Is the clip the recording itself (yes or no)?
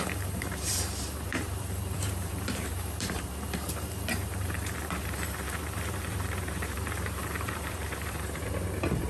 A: no